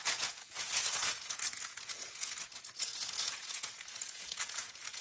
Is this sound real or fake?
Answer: fake